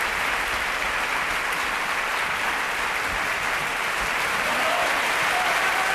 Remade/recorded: remade